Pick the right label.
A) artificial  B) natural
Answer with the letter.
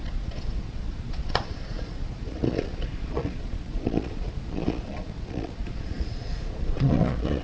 A